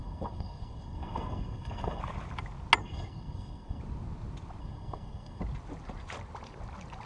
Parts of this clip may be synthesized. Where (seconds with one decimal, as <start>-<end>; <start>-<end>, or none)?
0.0-2.0; 2.8-3.8; 4.6-5.4